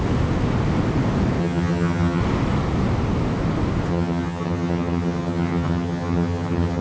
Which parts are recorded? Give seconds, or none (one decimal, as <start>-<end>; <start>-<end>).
0.0-1.4; 2.2-3.9